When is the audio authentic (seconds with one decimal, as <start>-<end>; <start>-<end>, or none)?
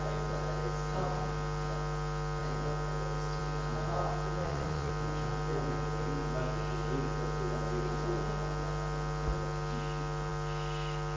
0.0-4.4; 4.9-11.2